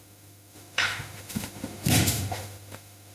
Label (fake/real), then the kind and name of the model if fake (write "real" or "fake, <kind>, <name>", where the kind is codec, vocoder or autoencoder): fake, autoencoder, DAC-VAE